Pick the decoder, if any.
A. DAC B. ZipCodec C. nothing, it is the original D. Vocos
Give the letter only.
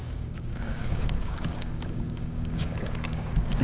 A